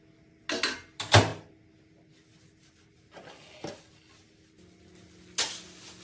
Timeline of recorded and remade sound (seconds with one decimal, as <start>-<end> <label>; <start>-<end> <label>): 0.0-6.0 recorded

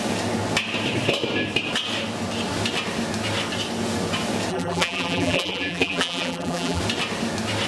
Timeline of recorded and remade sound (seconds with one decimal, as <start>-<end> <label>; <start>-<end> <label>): 0.0-4.5 recorded; 4.5-6.8 remade; 6.8-7.7 recorded

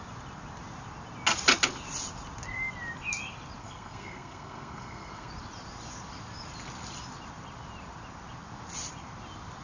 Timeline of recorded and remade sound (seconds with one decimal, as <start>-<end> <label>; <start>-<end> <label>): 0.0-3.6 recorded; 3.6-5.3 remade; 5.3-9.6 recorded

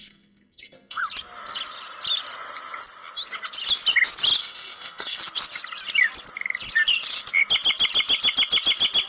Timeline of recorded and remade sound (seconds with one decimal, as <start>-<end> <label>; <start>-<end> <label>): 0.0-1.0 remade; 1.0-4.4 recorded; 4.4-5.2 remade; 5.2-9.1 recorded

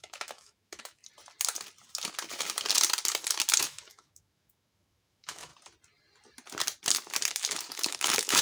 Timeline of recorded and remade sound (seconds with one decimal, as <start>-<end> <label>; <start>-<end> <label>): 0.0-1.0 remade; 1.0-3.6 recorded; 3.6-5.5 remade; 5.5-7.3 recorded; 7.3-8.4 remade